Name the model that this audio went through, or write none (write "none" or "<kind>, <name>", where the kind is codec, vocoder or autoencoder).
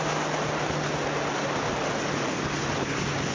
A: none